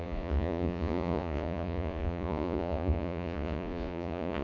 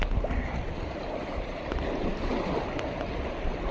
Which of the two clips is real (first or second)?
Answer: second